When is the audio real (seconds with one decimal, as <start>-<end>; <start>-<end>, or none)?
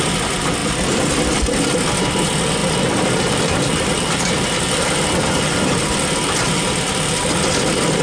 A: 0.0-0.6; 1.5-2.6; 7.2-8.0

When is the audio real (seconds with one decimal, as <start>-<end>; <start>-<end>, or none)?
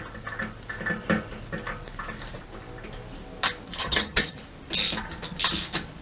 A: 0.0-3.8; 4.4-6.0